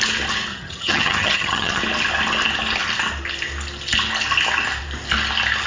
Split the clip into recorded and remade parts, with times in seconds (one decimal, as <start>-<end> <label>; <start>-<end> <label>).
0.0-0.5 recorded; 0.5-1.8 remade; 1.8-5.7 recorded